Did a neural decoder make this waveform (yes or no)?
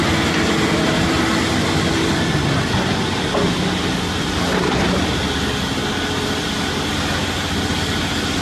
no